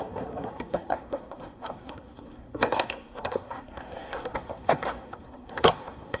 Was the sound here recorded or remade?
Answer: remade